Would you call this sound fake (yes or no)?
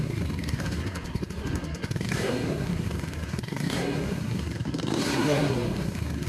yes